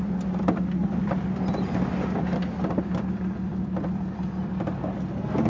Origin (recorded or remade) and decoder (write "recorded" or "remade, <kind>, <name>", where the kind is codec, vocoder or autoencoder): recorded